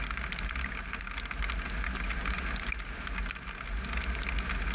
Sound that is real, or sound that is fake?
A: real